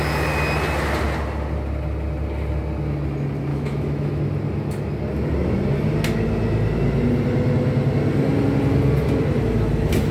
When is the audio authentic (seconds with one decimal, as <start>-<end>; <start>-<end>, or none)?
0.0-3.5; 4.2-10.1